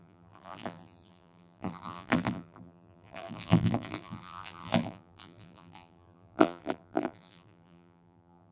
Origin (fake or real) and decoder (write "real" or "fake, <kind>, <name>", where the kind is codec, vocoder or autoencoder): fake, vocoder, BigVGAN v2